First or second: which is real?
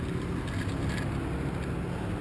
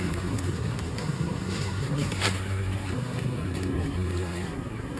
first